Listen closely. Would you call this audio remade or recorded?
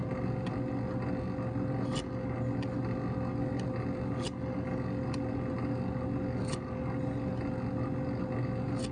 recorded